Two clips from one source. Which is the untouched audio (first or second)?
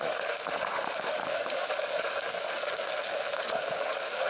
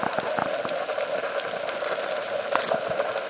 second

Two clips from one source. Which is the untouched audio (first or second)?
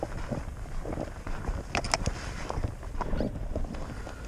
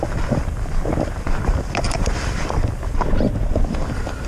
first